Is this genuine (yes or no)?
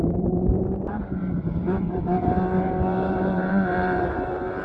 no